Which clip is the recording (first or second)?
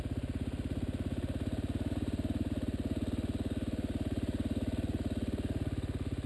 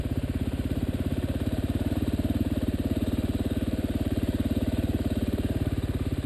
first